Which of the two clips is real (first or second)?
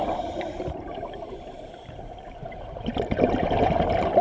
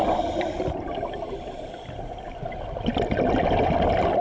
second